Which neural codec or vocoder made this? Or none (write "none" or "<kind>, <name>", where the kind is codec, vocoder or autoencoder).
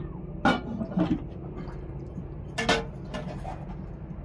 none